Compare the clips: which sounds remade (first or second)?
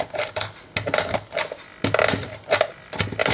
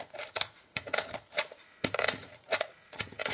second